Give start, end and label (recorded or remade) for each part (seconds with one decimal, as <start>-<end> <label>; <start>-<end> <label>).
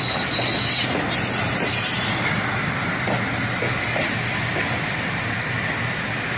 0.0-6.4 recorded